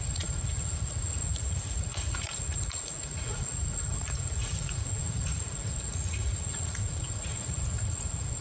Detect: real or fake fake